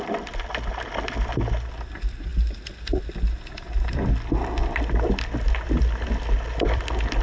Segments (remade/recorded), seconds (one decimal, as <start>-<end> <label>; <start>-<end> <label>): 0.0-7.2 recorded